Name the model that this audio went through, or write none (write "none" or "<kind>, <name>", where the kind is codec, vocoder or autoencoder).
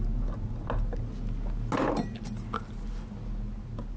none